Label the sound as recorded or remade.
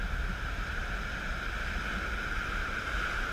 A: recorded